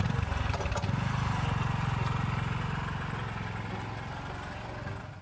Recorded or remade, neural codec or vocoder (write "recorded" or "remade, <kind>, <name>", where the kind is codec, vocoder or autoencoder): recorded